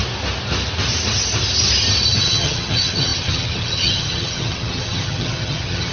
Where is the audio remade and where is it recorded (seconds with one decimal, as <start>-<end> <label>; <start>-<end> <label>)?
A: 0.0-2.2 recorded; 2.2-5.9 remade

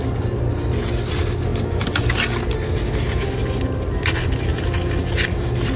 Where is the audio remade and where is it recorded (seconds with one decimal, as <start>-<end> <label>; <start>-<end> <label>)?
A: 0.0-5.8 recorded

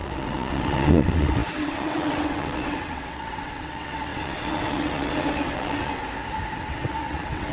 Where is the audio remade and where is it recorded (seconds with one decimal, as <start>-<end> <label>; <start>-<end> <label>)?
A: 0.0-6.0 remade; 6.0-6.6 recorded; 6.6-7.5 remade

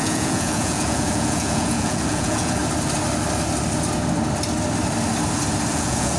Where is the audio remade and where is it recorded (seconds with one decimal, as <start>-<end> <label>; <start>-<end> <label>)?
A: 0.0-2.6 remade; 2.6-5.7 recorded; 5.7-6.2 remade

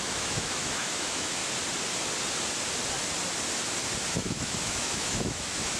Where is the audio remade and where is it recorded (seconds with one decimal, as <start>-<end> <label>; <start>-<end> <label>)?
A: 0.0-1.4 remade; 1.4-4.1 recorded; 4.1-5.8 remade